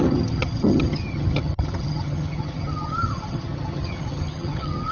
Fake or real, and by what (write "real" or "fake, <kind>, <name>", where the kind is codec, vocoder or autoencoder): fake, vocoder, HiFi-GAN